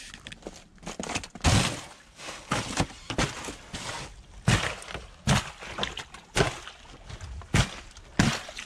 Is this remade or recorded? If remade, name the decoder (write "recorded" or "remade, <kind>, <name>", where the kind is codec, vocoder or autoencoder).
recorded